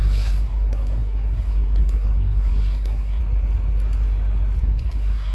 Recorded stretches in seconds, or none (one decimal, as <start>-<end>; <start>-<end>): 3.2-4.6